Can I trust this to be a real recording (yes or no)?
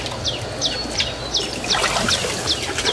yes